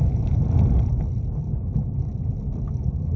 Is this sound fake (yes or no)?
no